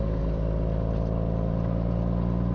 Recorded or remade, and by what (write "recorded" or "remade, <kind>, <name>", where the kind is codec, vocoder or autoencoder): recorded